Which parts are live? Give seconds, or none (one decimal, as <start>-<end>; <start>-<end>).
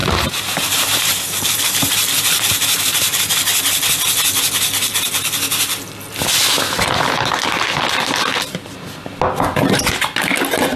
2.8-10.8